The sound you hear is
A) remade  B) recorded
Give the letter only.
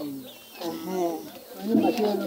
B